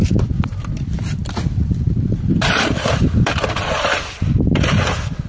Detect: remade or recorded remade